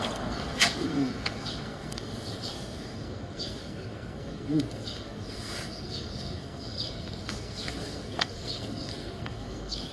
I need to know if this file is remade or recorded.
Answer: remade